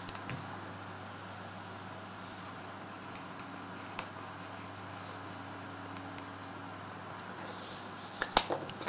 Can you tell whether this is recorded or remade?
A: recorded